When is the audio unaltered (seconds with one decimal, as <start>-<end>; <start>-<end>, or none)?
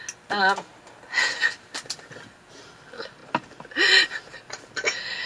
0.0-5.3